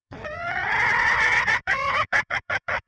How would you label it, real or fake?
fake